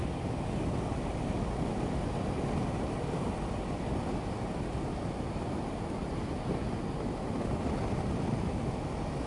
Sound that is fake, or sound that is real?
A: real